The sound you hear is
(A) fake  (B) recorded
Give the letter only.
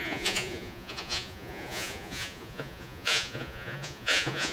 A